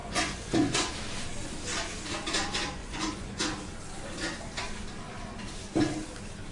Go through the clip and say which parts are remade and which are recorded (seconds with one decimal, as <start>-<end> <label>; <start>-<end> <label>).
0.0-0.9 remade; 0.9-2.8 recorded; 2.8-3.4 remade; 3.4-6.5 recorded